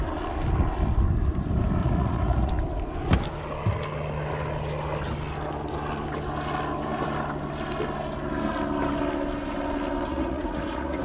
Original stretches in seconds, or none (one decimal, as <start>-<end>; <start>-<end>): 0.0-1.8; 2.5-10.1